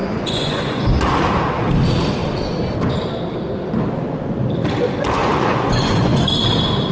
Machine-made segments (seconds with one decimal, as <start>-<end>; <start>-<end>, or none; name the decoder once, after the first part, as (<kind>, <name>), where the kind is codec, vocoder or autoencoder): 0.0-1.1 (vocoder, Vocos); 5.2-6.2